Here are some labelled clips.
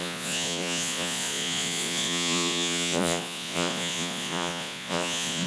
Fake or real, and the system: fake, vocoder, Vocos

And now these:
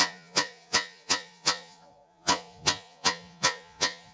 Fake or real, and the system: fake, vocoder, Vocos